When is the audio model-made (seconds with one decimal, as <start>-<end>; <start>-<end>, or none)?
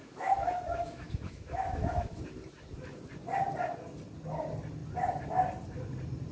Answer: 0.0-2.2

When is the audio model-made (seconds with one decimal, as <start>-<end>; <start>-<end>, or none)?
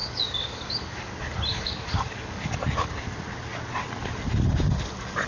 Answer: 0.0-1.1; 1.5-2.9